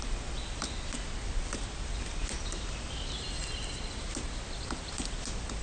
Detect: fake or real real